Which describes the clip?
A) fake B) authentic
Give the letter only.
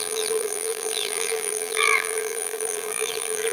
A